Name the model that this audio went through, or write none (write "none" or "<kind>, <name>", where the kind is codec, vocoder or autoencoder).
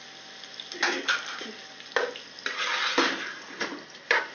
none